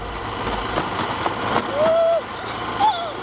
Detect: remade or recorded recorded